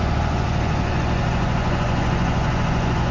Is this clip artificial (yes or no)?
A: yes